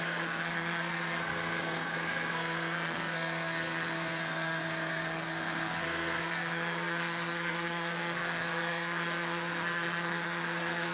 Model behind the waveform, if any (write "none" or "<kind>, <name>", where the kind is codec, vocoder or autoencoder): codec, SNAC